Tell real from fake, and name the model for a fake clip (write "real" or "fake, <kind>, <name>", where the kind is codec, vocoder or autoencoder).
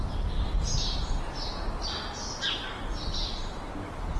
real